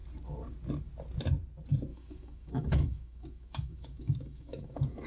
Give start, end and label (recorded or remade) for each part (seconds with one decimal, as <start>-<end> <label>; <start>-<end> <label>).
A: 0.0-1.9 recorded; 1.9-5.1 remade